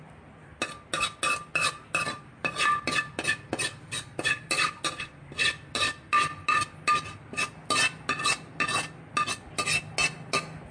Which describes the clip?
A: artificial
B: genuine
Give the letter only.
B